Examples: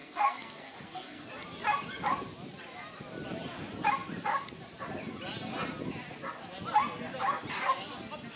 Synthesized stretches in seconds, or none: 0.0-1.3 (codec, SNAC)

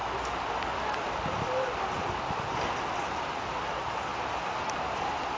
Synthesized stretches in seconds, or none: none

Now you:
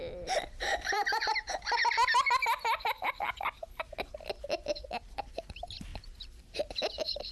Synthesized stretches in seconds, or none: 0.7-1.3 (vocoder, BigVGAN v2); 5.9-6.4